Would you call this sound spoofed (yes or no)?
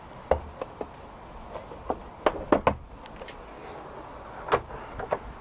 no